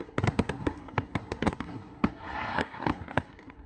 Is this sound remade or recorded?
remade